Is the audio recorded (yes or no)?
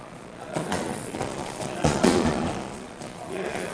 no